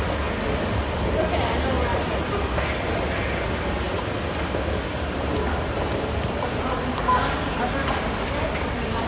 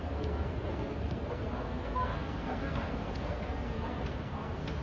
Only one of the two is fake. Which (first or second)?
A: second